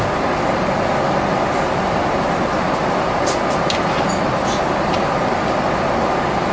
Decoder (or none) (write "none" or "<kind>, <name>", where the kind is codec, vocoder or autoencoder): none